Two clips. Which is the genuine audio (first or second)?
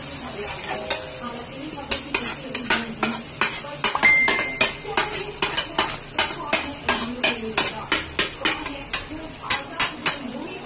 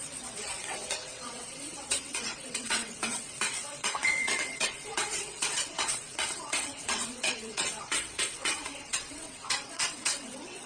first